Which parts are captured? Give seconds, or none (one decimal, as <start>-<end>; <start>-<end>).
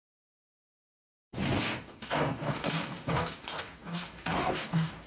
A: 0.6-1.6